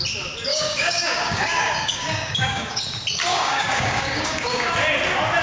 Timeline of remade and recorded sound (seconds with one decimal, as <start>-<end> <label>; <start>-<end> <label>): 0.0-0.5 recorded; 0.5-2.8 remade; 2.8-3.3 recorded; 3.3-4.7 remade; 4.7-5.4 recorded